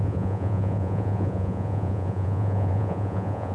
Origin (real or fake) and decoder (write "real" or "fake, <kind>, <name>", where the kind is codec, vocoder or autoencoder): fake, vocoder, Vocos